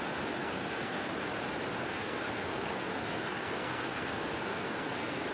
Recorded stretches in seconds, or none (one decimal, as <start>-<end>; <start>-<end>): 0.0-0.4; 1.1-1.8

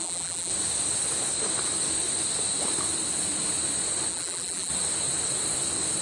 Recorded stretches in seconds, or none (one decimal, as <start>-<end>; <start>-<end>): 0.5-4.1; 4.7-6.0

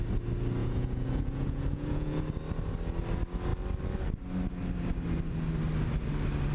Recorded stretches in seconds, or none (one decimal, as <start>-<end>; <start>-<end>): 0.0-0.6; 2.2-6.5

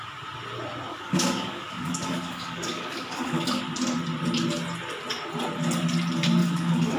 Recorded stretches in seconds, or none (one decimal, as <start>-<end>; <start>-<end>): 0.0-0.9; 3.6-6.4

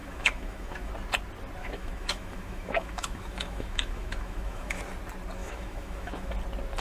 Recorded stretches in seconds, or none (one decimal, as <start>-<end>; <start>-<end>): 0.9-1.6; 4.8-5.4; 6.3-6.8